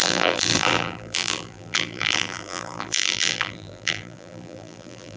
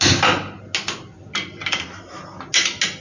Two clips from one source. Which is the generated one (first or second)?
first